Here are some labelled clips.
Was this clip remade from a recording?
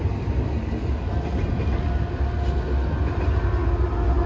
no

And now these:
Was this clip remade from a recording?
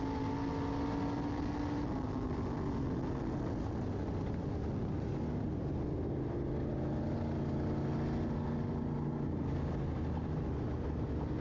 no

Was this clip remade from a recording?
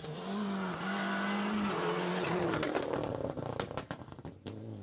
no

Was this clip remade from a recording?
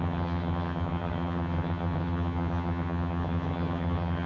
yes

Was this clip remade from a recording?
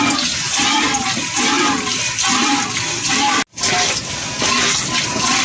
no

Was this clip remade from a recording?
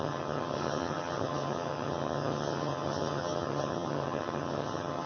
yes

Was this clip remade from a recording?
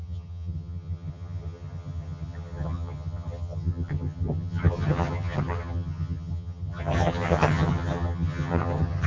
yes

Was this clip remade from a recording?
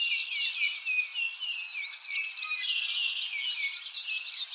no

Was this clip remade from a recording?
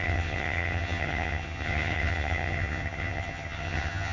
yes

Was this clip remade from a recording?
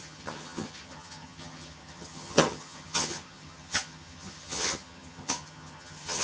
yes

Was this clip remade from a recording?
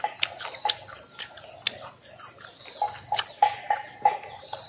no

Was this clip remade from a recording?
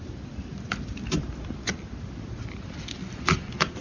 no